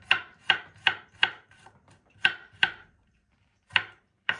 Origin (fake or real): fake